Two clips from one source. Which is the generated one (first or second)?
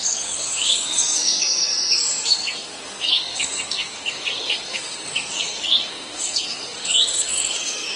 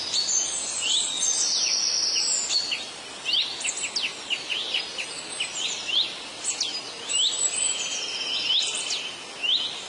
first